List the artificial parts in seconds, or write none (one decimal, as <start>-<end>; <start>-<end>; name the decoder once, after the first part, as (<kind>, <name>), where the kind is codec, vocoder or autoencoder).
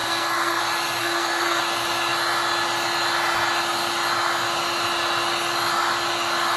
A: 0.0-0.6 (codec, SNAC); 1.0-1.6